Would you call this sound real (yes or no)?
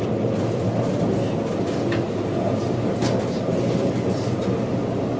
yes